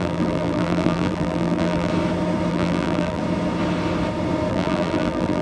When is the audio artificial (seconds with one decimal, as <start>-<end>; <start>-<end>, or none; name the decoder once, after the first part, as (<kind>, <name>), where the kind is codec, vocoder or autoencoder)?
0.0-1.9 (vocoder, BigVGAN v2); 2.5-3.2; 4.5-5.4